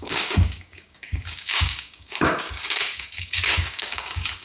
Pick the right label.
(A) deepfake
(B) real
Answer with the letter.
A